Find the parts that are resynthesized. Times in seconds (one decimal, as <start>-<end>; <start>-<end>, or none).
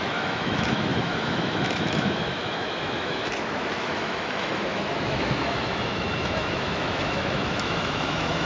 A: 0.0-8.5